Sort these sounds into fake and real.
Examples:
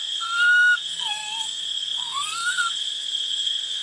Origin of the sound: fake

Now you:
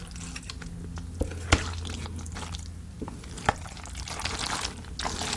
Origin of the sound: real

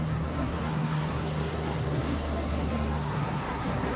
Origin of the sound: fake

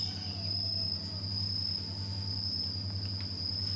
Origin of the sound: real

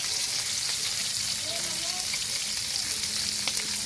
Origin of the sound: real